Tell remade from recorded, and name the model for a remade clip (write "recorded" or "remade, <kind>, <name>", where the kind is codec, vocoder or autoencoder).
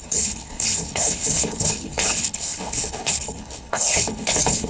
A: remade, codec, HILCodec